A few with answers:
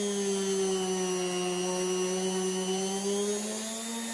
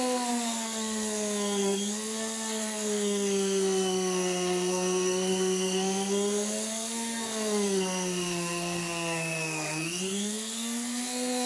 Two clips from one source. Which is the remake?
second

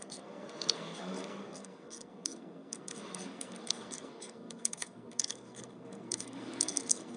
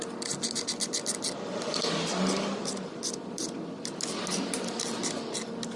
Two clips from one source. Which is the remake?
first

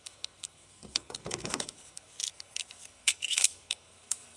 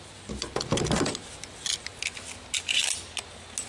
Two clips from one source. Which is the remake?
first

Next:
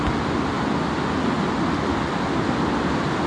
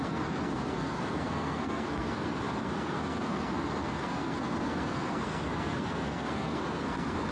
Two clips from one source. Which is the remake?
second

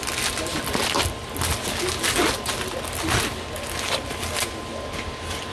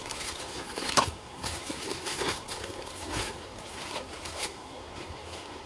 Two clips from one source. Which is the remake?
second